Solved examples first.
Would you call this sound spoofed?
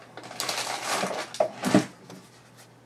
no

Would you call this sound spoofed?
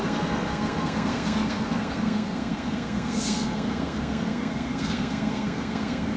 yes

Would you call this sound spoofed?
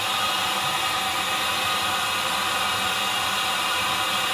no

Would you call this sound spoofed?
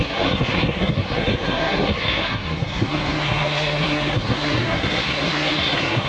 yes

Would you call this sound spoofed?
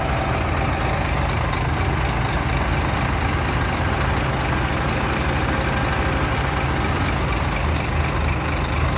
no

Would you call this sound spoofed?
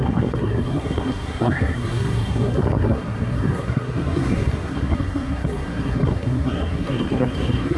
yes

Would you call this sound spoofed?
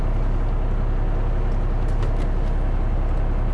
no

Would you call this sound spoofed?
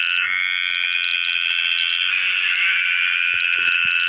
no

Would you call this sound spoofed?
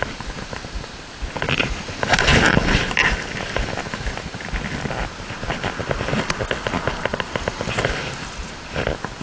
no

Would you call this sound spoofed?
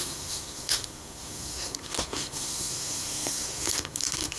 yes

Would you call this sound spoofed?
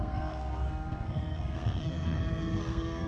yes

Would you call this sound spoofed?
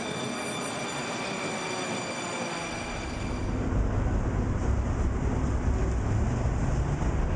no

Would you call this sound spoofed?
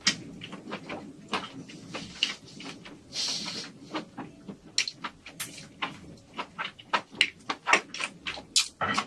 no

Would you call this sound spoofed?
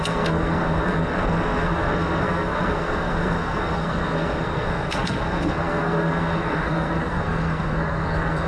yes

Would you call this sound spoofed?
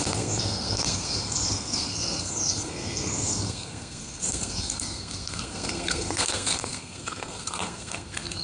yes